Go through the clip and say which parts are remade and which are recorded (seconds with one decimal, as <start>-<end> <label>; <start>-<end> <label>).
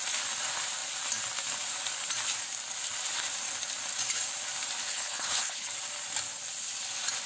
0.0-4.9 recorded; 4.9-5.7 remade; 5.7-7.3 recorded